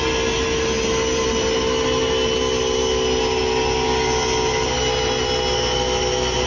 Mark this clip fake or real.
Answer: real